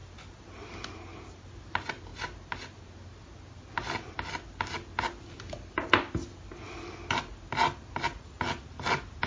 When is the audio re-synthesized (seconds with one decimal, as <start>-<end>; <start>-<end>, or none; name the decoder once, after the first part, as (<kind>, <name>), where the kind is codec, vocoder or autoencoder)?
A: none